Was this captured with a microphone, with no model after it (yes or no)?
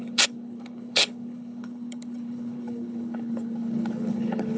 no